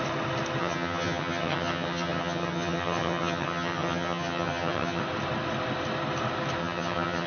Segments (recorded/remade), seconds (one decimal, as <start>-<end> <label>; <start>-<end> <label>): 0.0-0.6 recorded; 0.6-5.0 remade; 5.0-6.6 recorded; 6.6-7.3 remade